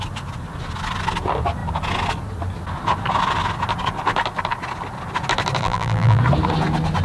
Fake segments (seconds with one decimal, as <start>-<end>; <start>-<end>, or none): 5.6-6.2